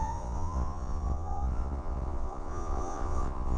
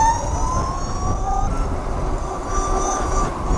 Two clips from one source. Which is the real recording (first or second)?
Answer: second